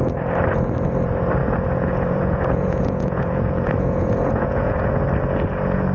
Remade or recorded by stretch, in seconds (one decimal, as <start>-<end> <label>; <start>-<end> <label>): 0.0-1.4 recorded; 1.4-4.9 remade; 4.9-5.9 recorded